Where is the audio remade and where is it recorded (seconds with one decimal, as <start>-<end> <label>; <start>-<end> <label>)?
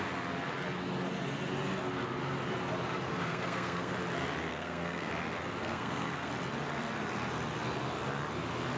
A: 0.0-3.2 recorded; 3.2-3.9 remade; 3.9-4.5 recorded; 4.5-5.1 remade; 5.1-5.6 recorded; 5.6-6.3 remade; 6.3-8.8 recorded